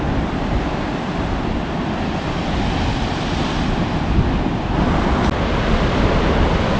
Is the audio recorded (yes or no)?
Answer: yes